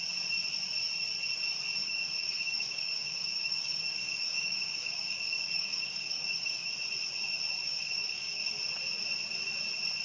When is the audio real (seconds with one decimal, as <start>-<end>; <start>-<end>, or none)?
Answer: 0.0-1.8; 6.7-7.6; 8.4-10.0